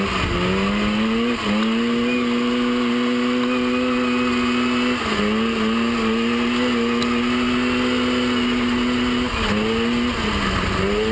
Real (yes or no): yes